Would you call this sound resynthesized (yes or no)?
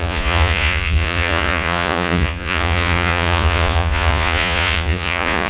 yes